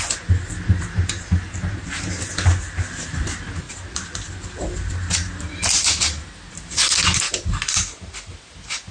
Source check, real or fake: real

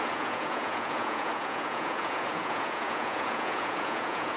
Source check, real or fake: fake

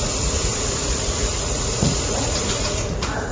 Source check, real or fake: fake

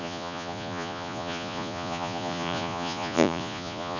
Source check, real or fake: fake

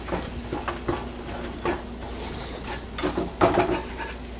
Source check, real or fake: real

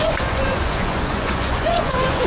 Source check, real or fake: fake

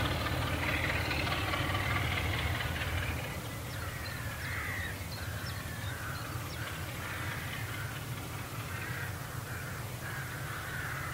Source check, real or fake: real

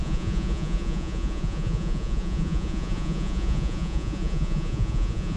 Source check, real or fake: fake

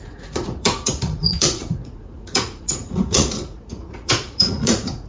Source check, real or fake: fake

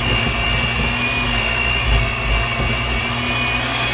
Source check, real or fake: real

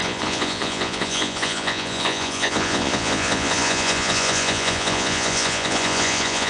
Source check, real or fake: fake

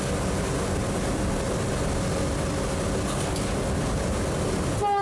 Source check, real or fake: real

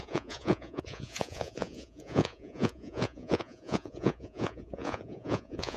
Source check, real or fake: fake